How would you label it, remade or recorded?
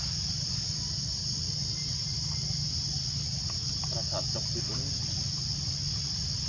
recorded